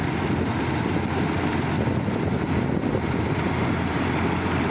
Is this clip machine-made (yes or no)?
no